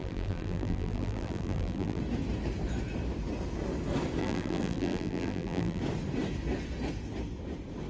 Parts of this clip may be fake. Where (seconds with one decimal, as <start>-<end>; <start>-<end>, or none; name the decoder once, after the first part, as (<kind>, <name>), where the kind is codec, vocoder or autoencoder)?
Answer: 0.0-2.0 (vocoder, BigVGAN v2); 4.2-5.8